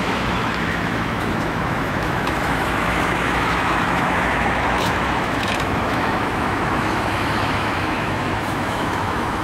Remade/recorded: remade